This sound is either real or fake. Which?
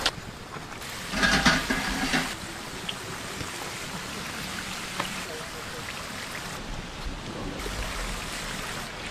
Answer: real